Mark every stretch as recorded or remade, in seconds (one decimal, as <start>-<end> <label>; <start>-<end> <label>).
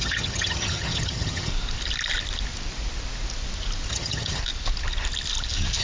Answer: 0.0-1.5 remade; 1.5-3.9 recorded; 3.9-4.4 remade; 4.4-5.8 recorded